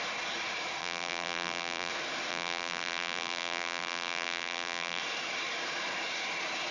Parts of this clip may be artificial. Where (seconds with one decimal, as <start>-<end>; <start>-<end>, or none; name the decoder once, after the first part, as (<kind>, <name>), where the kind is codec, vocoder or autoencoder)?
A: 0.8-1.9 (vocoder, BigVGAN v2); 2.3-5.0